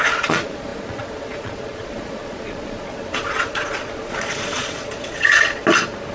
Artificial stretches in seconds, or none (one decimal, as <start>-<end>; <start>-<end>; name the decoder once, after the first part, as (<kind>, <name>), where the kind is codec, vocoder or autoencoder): 0.0-5.6 (vocoder, Vocos)